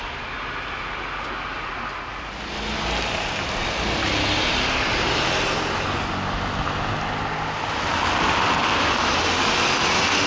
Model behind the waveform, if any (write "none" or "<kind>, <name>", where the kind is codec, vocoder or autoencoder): none